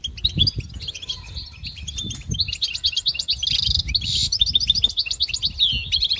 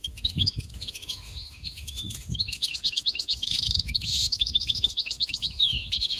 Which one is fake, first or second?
second